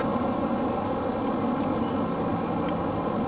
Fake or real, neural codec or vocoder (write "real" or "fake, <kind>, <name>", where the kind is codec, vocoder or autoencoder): real